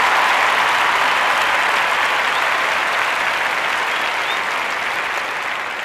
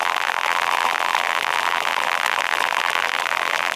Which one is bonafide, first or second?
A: first